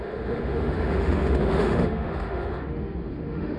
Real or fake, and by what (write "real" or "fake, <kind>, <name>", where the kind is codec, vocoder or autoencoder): fake, autoencoder, DAC-VAE